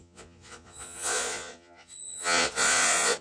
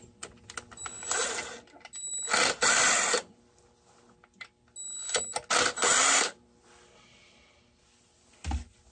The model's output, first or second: first